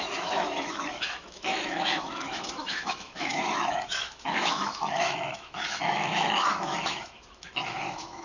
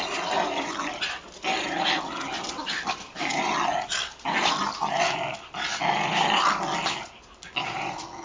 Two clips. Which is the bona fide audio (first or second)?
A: second